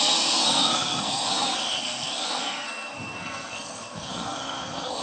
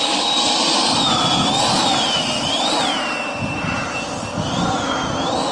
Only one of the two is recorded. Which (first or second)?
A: second